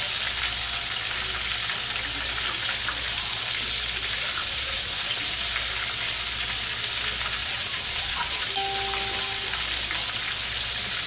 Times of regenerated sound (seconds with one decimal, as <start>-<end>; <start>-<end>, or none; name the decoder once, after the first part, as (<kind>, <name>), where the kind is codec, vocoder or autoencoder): 4.4-5.1 (vocoder, Vocos); 7.4-8.4